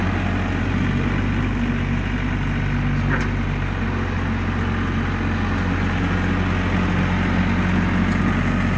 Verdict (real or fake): real